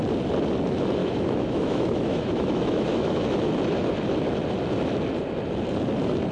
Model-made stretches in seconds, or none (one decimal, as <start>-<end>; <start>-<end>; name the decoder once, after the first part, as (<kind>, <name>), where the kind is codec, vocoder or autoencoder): 1.0-3.4 (autoencoder, DAC-VAE)